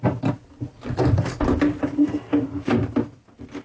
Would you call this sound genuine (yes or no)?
yes